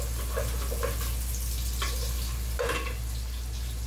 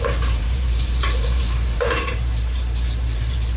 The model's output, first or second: second